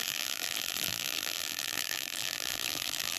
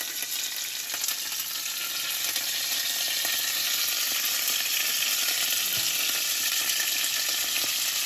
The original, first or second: second